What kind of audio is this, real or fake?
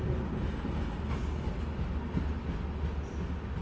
real